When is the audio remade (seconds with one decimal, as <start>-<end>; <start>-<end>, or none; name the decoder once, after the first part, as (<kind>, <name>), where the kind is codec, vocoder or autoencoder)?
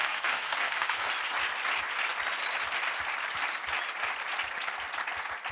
0.0-1.1 (codec, SNAC)